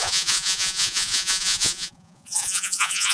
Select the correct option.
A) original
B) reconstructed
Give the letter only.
B